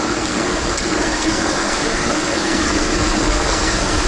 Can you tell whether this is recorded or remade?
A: remade